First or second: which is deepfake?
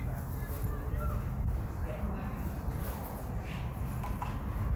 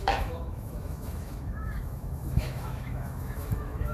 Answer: second